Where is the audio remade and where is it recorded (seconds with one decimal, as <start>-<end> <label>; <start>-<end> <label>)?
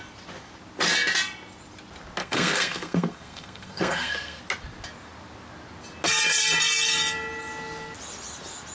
0.0-2.2 recorded; 2.2-4.4 remade; 4.4-8.7 recorded